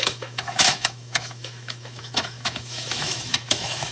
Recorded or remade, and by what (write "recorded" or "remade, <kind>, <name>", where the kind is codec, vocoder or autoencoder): remade, autoencoder, DAC-VAE